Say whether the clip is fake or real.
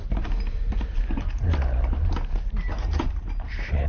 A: real